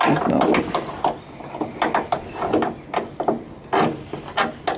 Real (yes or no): yes